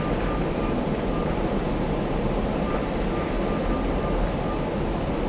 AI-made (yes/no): no